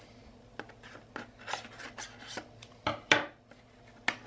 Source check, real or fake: real